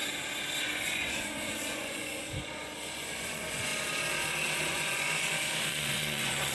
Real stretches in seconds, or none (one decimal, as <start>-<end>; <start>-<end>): 0.0-0.6; 3.7-4.7